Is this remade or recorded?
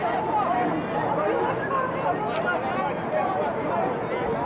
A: recorded